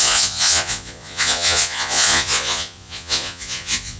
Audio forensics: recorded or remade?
remade